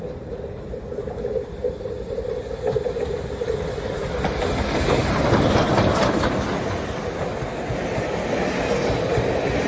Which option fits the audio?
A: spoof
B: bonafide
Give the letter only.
B